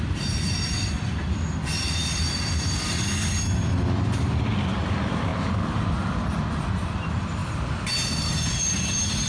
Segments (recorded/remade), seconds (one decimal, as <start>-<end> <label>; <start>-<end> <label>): 0.0-7.4 remade; 7.4-8.2 recorded; 8.2-9.3 remade

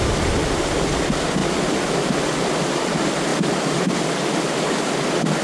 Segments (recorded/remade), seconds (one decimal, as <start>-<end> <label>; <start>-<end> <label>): 0.0-3.3 recorded; 3.3-4.0 remade; 4.0-5.4 recorded

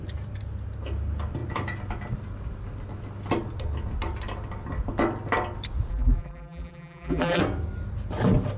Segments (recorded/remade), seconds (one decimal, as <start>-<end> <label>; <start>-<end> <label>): 0.0-5.9 recorded; 5.9-7.4 remade; 7.4-8.6 recorded

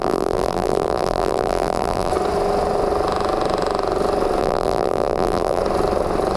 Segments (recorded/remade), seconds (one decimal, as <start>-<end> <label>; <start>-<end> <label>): 0.0-2.1 remade; 2.1-4.4 recorded; 4.4-5.6 remade; 5.6-6.4 recorded

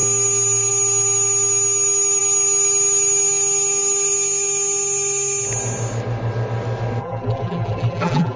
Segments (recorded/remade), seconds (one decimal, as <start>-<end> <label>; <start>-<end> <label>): 0.0-7.0 recorded; 7.0-8.4 remade

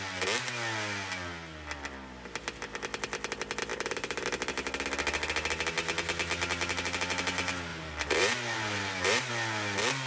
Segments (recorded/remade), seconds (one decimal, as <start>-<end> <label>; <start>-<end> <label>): 0.0-3.7 recorded; 3.7-4.3 remade; 4.3-7.7 recorded; 7.7-9.3 remade; 9.3-10.1 recorded